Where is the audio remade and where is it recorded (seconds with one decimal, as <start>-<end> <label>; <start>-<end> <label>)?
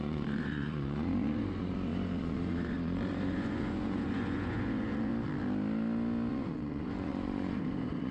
0.0-5.1 remade; 5.1-6.3 recorded; 6.3-8.1 remade